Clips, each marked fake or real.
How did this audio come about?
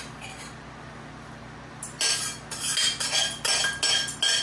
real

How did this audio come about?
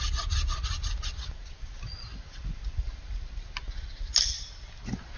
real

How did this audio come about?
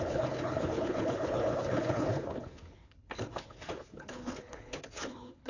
fake